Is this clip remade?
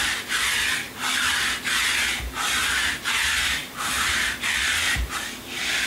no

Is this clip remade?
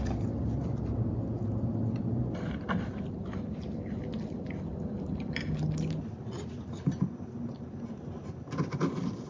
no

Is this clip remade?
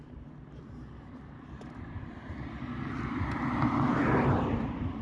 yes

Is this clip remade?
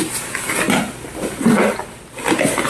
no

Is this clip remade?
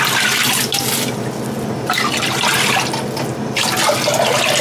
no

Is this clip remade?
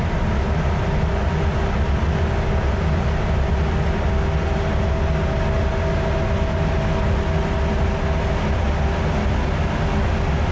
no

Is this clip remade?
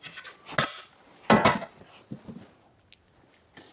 no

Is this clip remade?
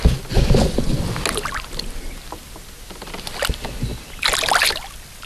no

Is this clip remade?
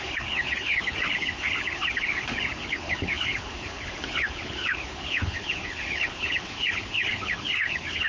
yes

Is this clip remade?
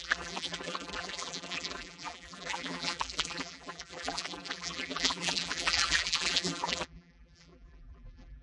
yes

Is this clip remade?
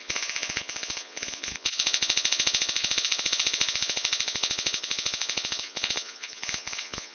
yes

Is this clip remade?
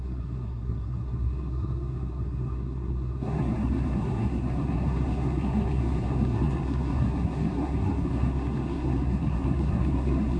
yes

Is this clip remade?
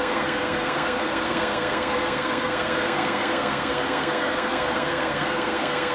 yes